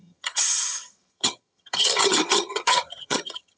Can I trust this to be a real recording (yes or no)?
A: no